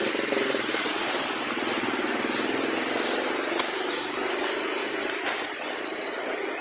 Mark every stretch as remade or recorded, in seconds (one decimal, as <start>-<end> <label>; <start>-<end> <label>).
0.0-1.1 remade; 1.1-4.8 recorded; 4.8-5.9 remade; 5.9-6.6 recorded